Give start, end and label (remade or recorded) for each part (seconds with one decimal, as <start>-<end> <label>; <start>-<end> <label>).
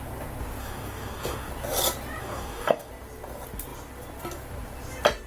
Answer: 0.0-0.6 recorded; 0.6-1.5 remade; 1.5-2.2 recorded; 2.2-2.9 remade; 2.9-5.3 recorded